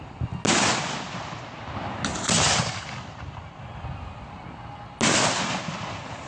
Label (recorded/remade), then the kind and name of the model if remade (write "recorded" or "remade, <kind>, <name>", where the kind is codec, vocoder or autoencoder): recorded